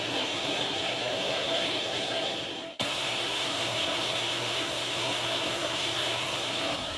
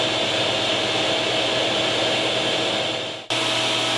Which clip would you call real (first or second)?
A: second